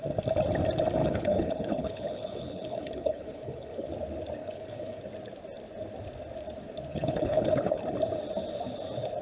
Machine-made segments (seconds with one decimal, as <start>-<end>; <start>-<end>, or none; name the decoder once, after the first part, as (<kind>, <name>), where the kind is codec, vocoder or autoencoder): 1.0-3.9 (codec, HILCodec); 4.4-5.0; 6.9-7.8